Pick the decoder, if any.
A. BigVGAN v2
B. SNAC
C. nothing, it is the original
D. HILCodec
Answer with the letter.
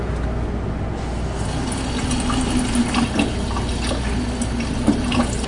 C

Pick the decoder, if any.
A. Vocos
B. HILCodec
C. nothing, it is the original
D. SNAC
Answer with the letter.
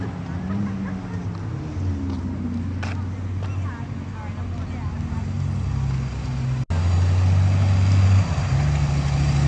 C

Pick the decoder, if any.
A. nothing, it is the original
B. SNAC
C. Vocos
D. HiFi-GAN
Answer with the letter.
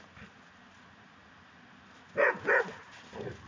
A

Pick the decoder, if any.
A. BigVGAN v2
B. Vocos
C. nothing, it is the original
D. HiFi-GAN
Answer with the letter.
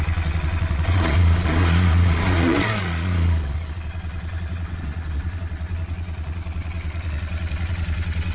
B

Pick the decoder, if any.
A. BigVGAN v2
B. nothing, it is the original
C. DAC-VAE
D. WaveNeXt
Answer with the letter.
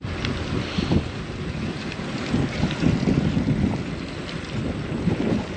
B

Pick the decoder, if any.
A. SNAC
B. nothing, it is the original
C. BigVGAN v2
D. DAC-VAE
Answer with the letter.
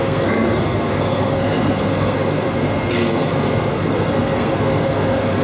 A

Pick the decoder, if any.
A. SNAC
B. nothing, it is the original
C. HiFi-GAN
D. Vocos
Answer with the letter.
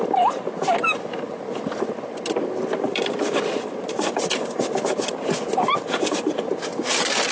B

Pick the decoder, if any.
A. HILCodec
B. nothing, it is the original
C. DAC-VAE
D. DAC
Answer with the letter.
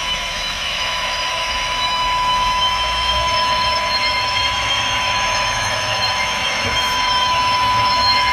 C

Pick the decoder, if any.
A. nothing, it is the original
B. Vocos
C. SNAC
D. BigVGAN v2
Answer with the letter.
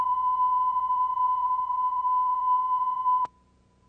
B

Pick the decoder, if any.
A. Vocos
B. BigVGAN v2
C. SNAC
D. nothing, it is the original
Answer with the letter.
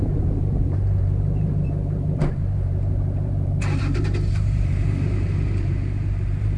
B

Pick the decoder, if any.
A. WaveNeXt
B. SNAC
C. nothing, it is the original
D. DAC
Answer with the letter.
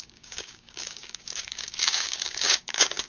D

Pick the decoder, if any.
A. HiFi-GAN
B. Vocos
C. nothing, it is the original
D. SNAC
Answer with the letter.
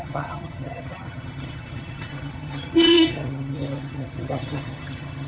A